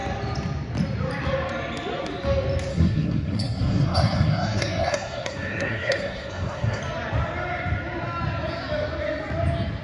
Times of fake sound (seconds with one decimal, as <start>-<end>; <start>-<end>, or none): 2.7-6.8